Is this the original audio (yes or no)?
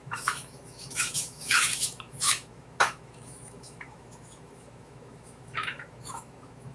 no